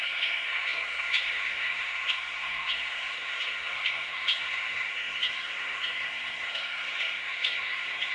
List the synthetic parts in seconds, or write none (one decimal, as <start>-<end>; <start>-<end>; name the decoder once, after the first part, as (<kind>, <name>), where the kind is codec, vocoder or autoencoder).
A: 0.0-8.1 (codec, SNAC)

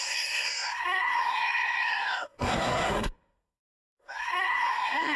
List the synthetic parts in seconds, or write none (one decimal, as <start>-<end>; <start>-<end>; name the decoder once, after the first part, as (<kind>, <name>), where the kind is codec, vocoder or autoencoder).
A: 0.0-5.2 (codec, SNAC)

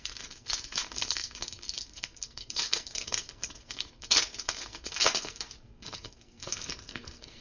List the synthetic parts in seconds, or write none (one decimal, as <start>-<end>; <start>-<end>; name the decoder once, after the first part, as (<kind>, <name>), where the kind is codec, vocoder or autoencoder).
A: 0.0-7.4 (codec, SNAC)

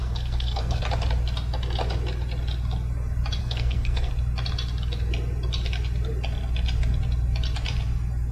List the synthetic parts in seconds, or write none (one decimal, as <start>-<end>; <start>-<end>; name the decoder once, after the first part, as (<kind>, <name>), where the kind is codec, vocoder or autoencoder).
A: 0.0-0.8 (codec, SNAC); 3.4-4.1